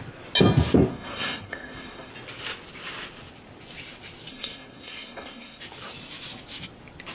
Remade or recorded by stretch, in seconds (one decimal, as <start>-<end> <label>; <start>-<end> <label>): 0.0-0.9 recorded; 0.9-2.1 remade; 2.1-4.3 recorded; 4.3-5.6 remade; 5.6-7.1 recorded